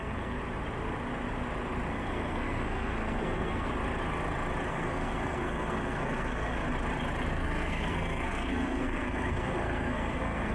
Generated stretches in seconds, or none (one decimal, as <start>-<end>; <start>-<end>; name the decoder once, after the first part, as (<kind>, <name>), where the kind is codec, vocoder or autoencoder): 0.0-0.4 (codec, SNAC); 1.9-3.7; 4.7-6.6; 7.3-10.5